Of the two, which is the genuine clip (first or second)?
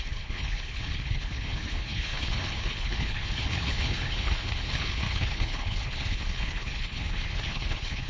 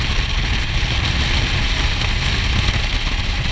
second